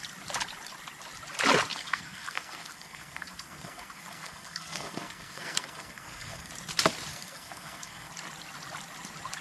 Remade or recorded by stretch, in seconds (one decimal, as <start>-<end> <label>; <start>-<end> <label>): 0.0-1.7 recorded; 1.7-6.5 remade; 6.5-7.1 recorded; 7.1-8.1 remade; 8.1-9.4 recorded